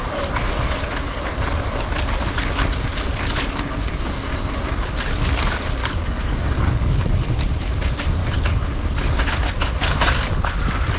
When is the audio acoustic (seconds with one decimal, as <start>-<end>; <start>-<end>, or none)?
0.0-3.8; 4.3-5.8; 7.3-11.0